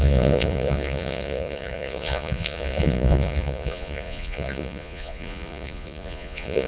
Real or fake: fake